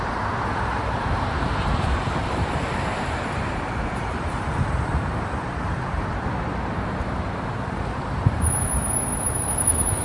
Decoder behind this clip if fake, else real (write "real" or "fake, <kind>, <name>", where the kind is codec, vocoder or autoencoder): fake, vocoder, BigVGAN v2